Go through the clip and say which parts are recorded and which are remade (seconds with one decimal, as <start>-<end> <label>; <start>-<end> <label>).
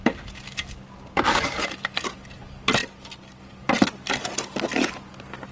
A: 0.0-5.5 recorded